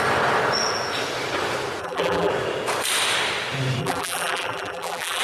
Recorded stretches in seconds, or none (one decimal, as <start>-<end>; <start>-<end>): 0.0-1.8; 2.3-3.8